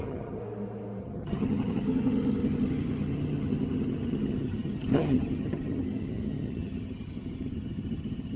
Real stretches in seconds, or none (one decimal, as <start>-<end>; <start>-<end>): 0.4-1.0